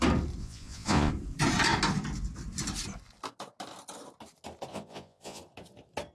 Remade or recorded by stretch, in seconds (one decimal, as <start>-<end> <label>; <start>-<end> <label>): 0.0-0.4 recorded; 0.4-1.1 remade; 1.1-4.7 recorded; 4.7-5.4 remade; 5.4-6.1 recorded